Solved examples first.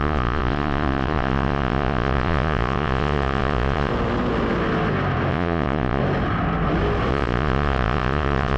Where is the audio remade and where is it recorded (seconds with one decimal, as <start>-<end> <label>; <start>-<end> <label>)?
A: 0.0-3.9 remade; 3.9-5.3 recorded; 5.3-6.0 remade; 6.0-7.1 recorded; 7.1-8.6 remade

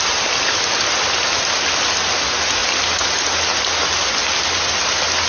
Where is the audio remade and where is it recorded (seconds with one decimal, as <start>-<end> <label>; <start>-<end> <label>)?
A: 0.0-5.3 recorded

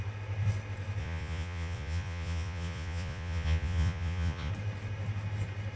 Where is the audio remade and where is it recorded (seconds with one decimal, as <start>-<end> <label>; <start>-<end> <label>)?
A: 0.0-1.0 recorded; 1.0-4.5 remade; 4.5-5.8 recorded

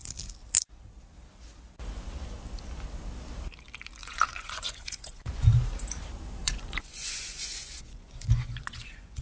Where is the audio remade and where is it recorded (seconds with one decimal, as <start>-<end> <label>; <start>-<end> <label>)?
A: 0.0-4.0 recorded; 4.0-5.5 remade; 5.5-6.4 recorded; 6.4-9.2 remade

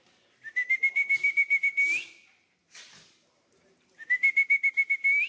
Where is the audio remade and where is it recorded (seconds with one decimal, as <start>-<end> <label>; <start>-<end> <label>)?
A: 0.0-5.3 recorded

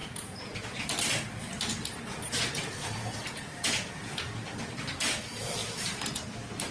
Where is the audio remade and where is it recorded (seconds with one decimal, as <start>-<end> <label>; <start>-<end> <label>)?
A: 0.0-0.8 remade; 0.8-2.2 recorded; 2.2-4.3 remade; 4.3-6.7 recorded

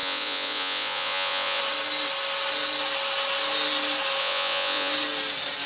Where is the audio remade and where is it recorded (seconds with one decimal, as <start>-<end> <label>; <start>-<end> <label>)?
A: 0.0-1.6 remade; 1.6-4.2 recorded; 4.2-4.9 remade; 4.9-5.7 recorded

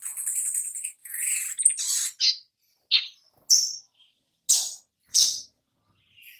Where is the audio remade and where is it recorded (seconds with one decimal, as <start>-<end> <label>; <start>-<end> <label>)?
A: 0.0-1.0 recorded; 1.0-1.6 remade; 1.6-5.1 recorded; 5.1-5.6 remade; 5.6-6.4 recorded